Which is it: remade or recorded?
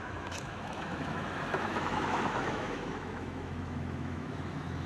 remade